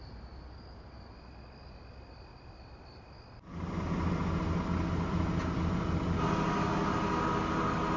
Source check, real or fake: real